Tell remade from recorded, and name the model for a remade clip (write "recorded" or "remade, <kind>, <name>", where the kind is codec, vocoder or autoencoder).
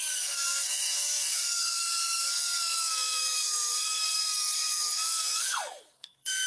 remade, codec, SNAC